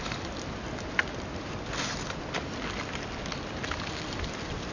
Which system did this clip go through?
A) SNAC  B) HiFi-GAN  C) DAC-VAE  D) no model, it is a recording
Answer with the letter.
D